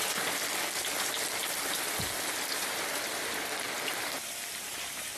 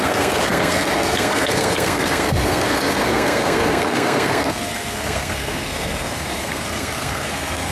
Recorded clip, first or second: first